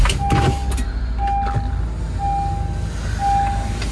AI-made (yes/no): no